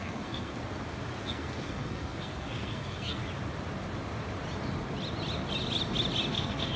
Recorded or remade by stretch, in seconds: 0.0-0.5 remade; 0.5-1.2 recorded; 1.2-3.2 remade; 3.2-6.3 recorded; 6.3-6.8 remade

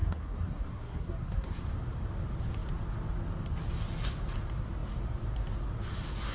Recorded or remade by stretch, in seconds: 0.0-1.6 remade; 1.6-6.3 recorded

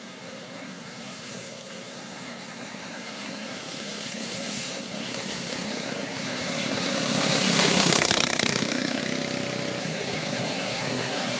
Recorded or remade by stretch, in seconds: 0.0-9.0 remade; 9.0-9.8 recorded; 9.8-11.4 remade

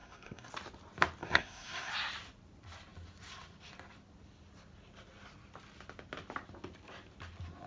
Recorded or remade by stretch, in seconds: 0.0-0.5 remade; 0.5-1.2 recorded; 1.2-1.9 remade; 1.9-7.7 recorded

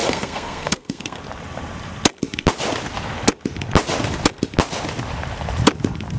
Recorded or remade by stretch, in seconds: 0.0-1.2 remade; 1.2-6.2 recorded

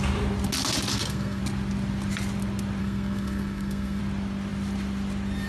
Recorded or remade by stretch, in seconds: 0.0-0.9 recorded; 0.9-1.4 remade; 1.4-2.8 recorded; 2.8-4.0 remade; 4.0-5.5 recorded